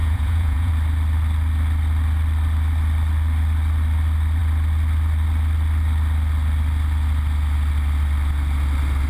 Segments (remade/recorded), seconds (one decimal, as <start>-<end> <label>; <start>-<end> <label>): 0.0-0.7 remade; 0.7-9.1 recorded